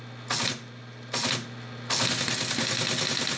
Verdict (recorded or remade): recorded